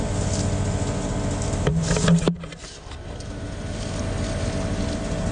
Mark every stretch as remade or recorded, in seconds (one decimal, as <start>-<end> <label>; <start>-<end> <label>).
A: 0.0-5.3 recorded